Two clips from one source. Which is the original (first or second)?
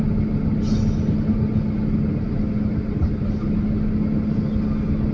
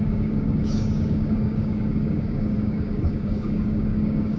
first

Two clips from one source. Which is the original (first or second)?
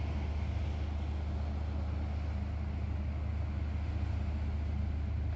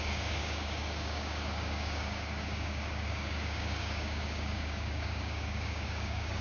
first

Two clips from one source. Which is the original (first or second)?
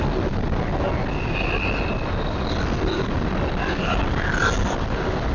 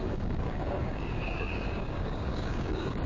first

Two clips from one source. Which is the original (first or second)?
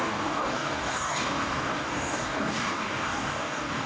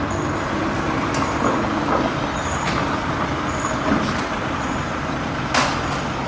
second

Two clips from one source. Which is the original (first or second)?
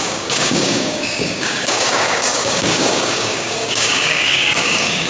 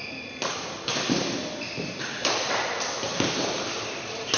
second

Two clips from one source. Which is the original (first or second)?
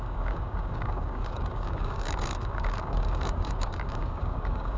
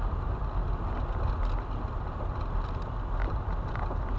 second